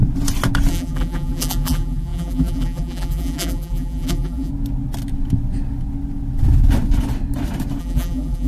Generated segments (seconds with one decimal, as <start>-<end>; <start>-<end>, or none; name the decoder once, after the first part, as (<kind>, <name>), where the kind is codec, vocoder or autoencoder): 0.7-4.5 (vocoder, BigVGAN v2); 7.8-8.5